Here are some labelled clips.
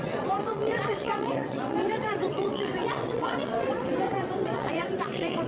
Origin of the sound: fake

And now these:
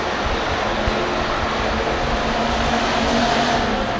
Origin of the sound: real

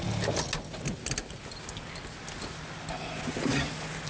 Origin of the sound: real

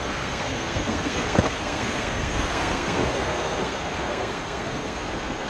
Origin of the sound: fake